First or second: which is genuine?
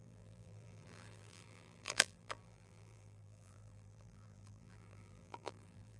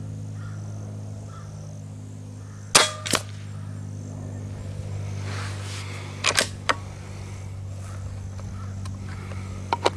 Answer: second